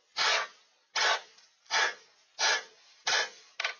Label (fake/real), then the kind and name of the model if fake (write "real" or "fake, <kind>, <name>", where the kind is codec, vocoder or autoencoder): real